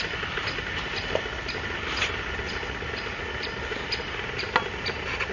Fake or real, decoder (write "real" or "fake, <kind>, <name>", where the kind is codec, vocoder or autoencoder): real